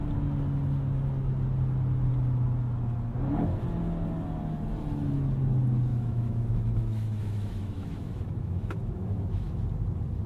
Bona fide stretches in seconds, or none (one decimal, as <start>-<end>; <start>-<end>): 0.0-5.9; 9.6-10.3